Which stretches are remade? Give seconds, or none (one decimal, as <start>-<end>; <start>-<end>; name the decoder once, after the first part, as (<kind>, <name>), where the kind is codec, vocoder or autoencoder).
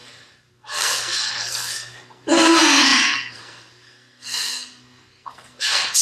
0.0-6.0 (codec, SNAC)